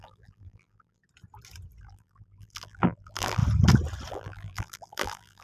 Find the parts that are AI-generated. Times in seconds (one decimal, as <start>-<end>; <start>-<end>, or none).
0.0-1.0; 1.8-3.4; 4.1-5.4

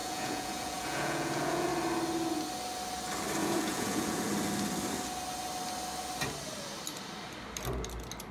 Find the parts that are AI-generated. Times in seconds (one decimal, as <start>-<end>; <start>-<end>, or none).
0.0-1.7; 3.4-4.3

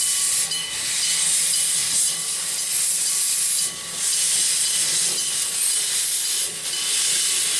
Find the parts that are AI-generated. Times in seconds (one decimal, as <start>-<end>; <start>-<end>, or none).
none

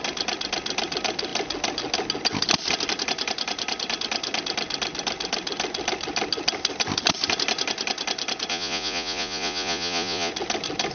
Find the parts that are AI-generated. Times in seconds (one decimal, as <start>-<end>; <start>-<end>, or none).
8.5-10.3

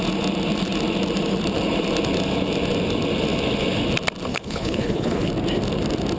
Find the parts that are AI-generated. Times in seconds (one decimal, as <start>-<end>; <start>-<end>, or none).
4.3-5.3

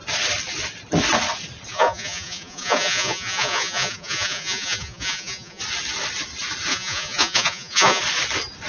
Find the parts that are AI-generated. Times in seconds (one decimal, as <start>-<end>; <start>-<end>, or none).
1.7-5.6; 6.7-8.0

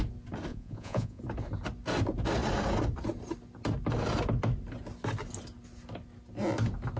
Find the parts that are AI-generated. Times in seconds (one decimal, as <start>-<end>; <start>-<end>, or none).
0.5-1.2

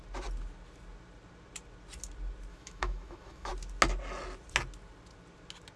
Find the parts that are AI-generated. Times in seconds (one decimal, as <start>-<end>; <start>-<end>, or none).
2.5-3.5